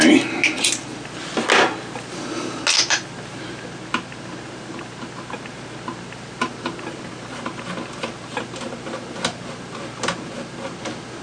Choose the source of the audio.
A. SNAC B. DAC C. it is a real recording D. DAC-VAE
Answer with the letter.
C